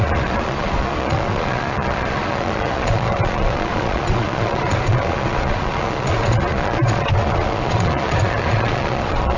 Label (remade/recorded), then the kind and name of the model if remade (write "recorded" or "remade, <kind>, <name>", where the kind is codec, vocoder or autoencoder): remade, vocoder, Vocos